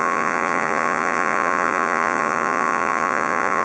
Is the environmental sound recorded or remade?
remade